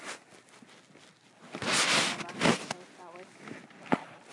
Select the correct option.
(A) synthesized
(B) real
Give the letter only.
B